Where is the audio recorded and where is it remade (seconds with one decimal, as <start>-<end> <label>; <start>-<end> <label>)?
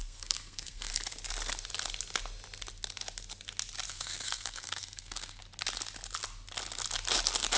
0.0-0.9 remade; 0.9-3.9 recorded; 3.9-5.4 remade; 5.4-7.6 recorded